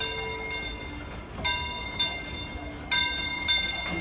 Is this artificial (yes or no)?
no